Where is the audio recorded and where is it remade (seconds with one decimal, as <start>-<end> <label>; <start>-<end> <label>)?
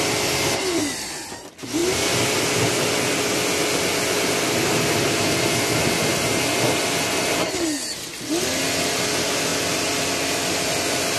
0.0-11.2 recorded